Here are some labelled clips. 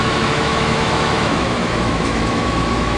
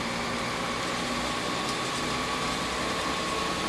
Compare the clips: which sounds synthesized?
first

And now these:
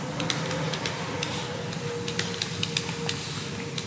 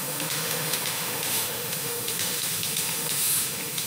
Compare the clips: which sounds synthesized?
second